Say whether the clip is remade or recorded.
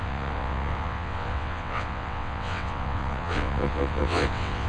remade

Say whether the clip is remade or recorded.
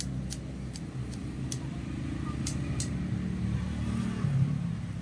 recorded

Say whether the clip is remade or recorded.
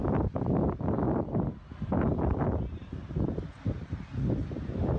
remade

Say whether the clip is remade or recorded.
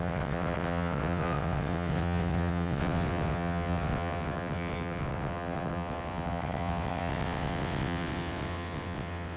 remade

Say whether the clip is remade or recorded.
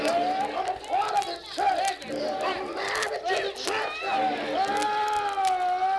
recorded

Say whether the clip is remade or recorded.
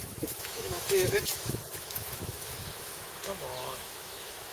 remade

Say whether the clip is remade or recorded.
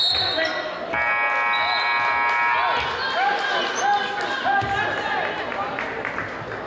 recorded